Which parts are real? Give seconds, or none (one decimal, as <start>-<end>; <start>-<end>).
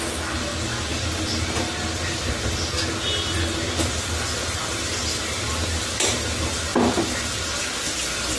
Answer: 0.0-8.4